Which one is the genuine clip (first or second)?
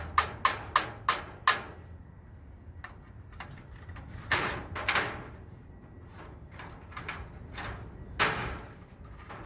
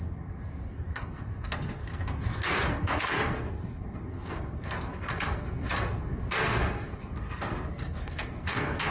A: first